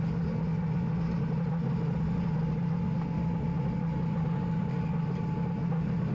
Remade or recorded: recorded